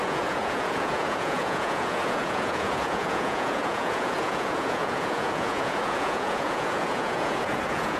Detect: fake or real fake